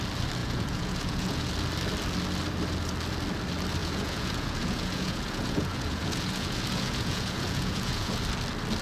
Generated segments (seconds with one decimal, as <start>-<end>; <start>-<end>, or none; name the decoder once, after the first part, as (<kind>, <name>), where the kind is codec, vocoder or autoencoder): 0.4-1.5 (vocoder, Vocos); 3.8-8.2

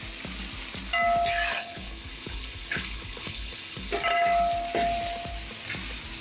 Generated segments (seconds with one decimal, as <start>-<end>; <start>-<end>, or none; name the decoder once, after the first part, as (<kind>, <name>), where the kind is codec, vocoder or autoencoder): 1.5-3.9 (codec, HILCodec)

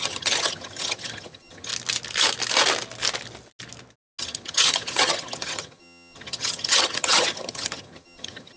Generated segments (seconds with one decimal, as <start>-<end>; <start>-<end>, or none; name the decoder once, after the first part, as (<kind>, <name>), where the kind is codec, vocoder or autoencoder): 0.0-1.7 (vocoder, HiFi-GAN); 4.2-8.6

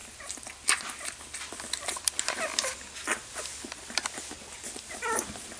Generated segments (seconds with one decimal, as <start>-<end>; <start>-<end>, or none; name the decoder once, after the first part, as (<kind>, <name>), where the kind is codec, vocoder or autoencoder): none

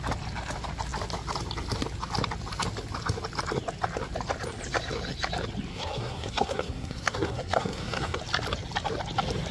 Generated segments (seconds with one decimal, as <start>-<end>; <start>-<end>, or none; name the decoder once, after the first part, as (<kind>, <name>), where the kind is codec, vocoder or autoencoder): 5.7-8.2 (codec, SNAC)

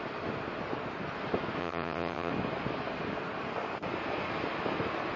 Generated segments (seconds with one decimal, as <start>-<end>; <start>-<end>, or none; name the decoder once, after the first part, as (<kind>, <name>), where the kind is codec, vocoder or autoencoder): 1.6-2.3 (vocoder, HiFi-GAN)

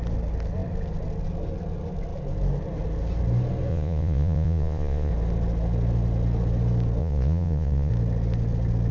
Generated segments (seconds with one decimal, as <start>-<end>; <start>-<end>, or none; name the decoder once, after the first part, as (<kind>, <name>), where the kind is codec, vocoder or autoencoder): 3.7-5.1 (vocoder, Vocos); 7.0-7.9